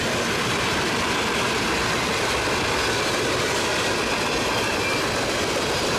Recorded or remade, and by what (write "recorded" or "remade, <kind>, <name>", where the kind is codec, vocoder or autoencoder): recorded